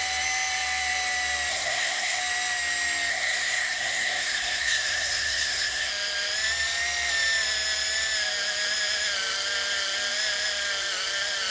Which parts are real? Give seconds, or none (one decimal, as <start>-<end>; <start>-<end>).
0.0-1.5; 2.2-3.1; 5.9-11.5